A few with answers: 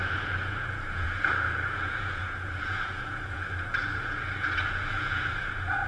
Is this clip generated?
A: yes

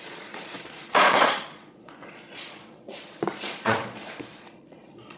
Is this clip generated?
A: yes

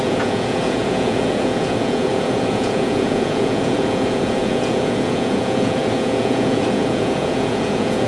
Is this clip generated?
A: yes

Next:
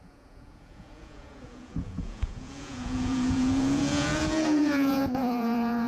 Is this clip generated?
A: yes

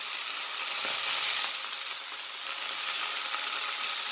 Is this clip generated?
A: no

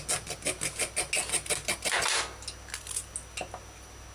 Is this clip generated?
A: no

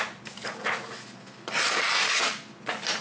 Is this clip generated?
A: no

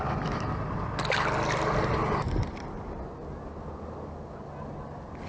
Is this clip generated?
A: no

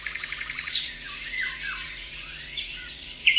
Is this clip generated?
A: yes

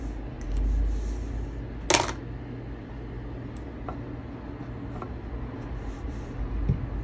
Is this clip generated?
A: no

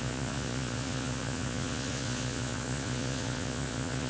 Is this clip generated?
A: yes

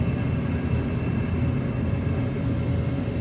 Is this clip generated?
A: no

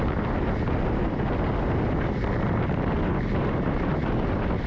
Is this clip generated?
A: no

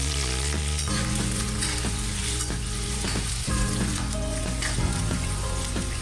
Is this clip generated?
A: yes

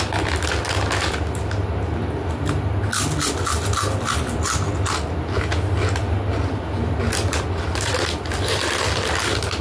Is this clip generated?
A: no